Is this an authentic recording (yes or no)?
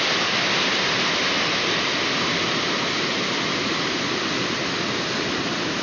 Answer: yes